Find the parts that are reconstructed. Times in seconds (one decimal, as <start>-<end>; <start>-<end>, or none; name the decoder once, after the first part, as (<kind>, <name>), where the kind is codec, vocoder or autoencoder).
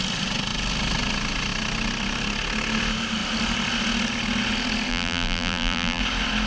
4.9-6.0 (vocoder, BigVGAN v2)